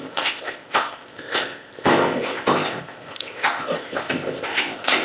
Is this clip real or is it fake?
fake